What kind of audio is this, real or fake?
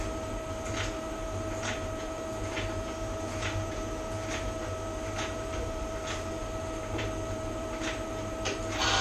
fake